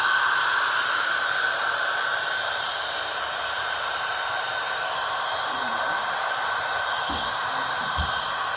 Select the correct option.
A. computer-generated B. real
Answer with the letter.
A